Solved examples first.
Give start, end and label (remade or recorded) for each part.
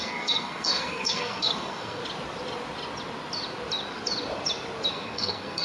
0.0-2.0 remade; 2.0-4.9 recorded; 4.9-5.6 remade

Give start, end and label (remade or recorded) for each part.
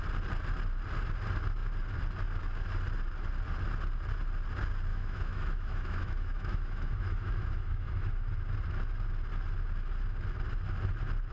0.0-4.9 recorded; 4.9-8.3 remade; 8.3-11.3 recorded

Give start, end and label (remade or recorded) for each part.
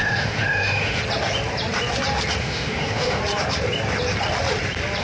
0.0-1.0 remade; 1.0-2.4 recorded; 2.4-3.2 remade; 3.2-5.0 recorded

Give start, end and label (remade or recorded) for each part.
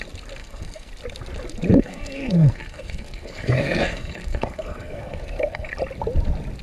0.0-0.4 recorded; 0.4-0.9 remade; 0.9-1.7 recorded; 1.7-5.7 remade; 5.7-6.6 recorded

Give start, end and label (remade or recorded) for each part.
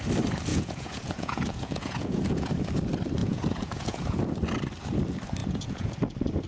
0.0-0.5 recorded; 0.5-2.5 remade; 2.5-3.2 recorded; 3.2-4.2 remade; 4.2-5.4 recorded; 5.4-5.9 remade; 5.9-6.5 recorded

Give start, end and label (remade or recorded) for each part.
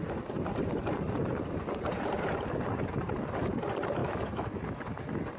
0.0-4.0 recorded; 4.0-4.6 remade; 4.6-5.4 recorded